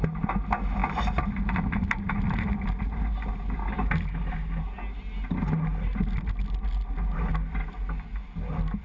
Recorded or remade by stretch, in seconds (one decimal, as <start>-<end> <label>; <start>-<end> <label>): 0.0-8.8 recorded

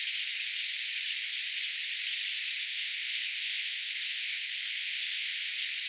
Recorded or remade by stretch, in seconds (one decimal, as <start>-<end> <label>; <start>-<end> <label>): 0.0-2.6 recorded; 2.6-5.5 remade; 5.5-5.9 recorded

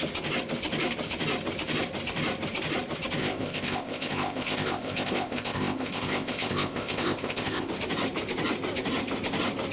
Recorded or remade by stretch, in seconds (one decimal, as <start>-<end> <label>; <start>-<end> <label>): 0.0-3.2 recorded; 3.2-7.7 remade; 7.7-9.7 recorded

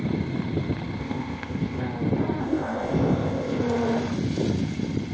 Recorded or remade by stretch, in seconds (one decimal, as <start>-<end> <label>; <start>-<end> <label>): 0.0-1.0 recorded; 1.0-1.8 remade; 1.8-2.4 recorded; 2.4-3.6 remade; 3.6-5.1 recorded

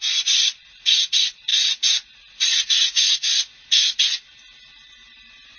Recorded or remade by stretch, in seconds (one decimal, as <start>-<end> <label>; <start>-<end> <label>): 0.0-5.6 recorded

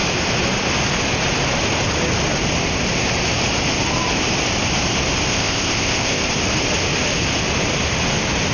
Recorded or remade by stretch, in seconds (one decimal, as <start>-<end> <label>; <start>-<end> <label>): 0.0-5.3 recorded; 5.3-6.2 remade; 6.2-8.5 recorded

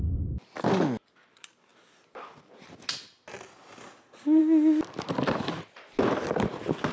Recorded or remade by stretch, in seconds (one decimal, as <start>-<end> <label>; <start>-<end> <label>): 0.0-6.9 recorded